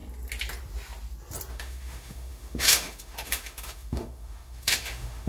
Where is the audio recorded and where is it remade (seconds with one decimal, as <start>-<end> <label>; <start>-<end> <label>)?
0.0-1.5 recorded; 1.5-5.3 remade